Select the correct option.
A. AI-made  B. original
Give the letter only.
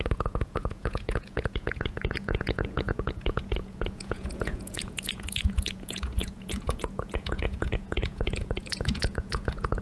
A